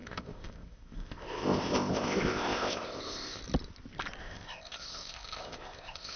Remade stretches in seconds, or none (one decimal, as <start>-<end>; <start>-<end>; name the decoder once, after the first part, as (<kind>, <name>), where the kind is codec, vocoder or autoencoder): 0.0-3.4 (codec, ZipCodec); 4.2-6.2